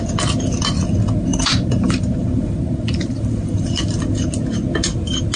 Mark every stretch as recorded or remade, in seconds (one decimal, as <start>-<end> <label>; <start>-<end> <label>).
0.0-1.3 recorded; 1.3-3.9 remade; 3.9-5.4 recorded